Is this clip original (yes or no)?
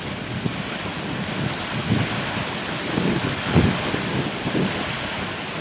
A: yes